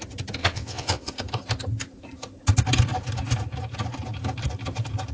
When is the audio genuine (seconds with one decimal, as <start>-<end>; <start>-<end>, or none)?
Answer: 0.0-0.4; 1.1-5.1